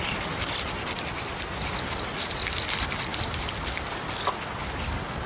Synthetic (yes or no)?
no